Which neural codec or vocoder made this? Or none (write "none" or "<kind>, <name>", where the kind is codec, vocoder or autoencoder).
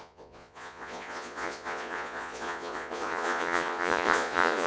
vocoder, Vocos